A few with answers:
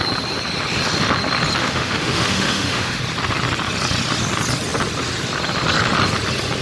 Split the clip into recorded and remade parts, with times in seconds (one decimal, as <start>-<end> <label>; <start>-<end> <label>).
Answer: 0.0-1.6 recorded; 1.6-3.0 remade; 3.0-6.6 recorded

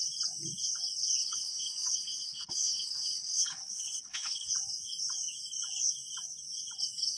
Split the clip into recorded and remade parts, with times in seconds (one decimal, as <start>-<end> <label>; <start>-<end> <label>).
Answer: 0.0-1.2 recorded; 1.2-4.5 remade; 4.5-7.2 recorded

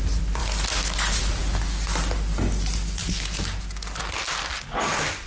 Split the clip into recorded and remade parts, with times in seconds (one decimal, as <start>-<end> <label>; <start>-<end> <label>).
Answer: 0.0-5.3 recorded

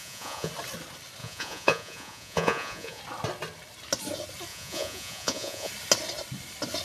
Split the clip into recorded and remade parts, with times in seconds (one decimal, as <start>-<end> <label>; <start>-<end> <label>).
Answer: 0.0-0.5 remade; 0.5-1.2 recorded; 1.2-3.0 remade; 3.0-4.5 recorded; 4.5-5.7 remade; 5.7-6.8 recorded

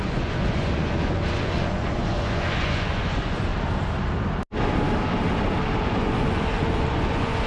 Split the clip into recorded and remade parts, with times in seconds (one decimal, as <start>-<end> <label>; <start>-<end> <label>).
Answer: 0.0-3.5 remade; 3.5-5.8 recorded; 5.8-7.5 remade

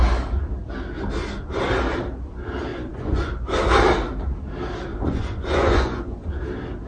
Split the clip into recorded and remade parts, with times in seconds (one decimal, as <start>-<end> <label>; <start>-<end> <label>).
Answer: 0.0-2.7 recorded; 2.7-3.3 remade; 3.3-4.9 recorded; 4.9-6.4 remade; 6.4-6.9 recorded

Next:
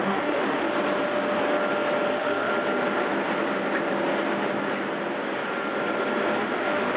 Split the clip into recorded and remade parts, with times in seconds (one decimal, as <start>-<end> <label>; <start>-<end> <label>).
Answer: 0.0-0.7 remade; 0.7-2.1 recorded; 2.1-2.5 remade; 2.5-6.4 recorded; 6.4-7.0 remade